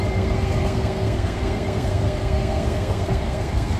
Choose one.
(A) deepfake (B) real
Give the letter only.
A